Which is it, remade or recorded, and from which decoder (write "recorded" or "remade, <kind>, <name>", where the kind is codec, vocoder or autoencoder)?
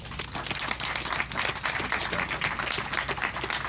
recorded